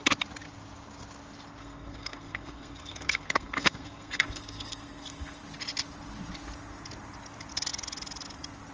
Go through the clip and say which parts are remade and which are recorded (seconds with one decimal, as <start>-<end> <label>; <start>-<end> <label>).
0.0-1.6 recorded; 1.6-5.4 remade; 5.4-8.7 recorded